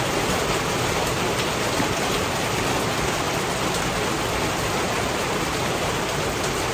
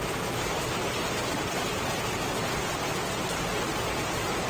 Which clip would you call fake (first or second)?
first